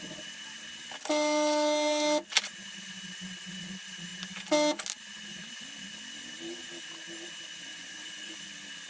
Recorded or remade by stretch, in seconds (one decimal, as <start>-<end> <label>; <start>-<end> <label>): 0.0-7.7 recorded; 7.7-8.4 remade; 8.4-8.9 recorded

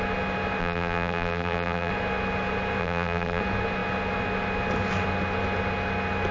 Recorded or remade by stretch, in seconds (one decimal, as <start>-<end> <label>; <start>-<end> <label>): 0.0-0.6 recorded; 0.6-1.9 remade; 1.9-2.8 recorded; 2.8-3.4 remade; 3.4-6.3 recorded

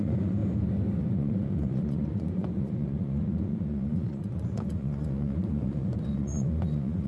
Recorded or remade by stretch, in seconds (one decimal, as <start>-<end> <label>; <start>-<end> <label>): 0.0-0.4 remade; 0.4-1.0 recorded; 1.0-7.1 remade

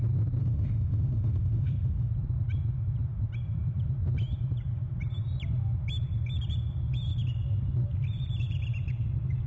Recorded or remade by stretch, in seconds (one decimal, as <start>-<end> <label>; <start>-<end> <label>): 0.0-0.4 recorded; 0.4-2.1 remade; 2.1-9.5 recorded

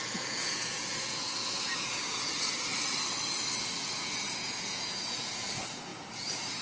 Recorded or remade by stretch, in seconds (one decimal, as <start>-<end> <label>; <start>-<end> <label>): 0.0-2.7 remade; 2.7-3.9 recorded; 3.9-6.6 remade

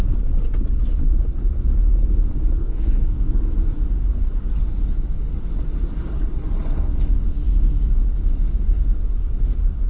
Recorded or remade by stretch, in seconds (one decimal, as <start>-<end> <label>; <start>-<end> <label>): 0.0-2.6 recorded; 2.6-3.3 remade; 3.3-9.9 recorded

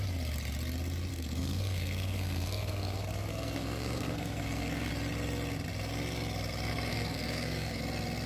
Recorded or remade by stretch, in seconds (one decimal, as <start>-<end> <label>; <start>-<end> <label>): 0.0-1.1 recorded; 1.1-4.9 remade; 4.9-6.9 recorded; 6.9-7.8 remade; 7.8-8.3 recorded